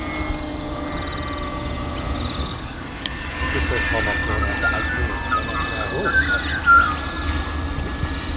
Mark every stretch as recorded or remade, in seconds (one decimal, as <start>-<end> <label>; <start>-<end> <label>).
0.0-2.4 recorded; 2.4-3.7 remade; 3.7-8.4 recorded